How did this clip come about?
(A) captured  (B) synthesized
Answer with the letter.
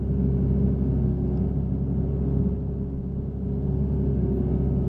A